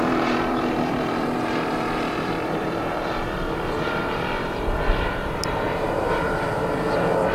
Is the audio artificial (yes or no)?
yes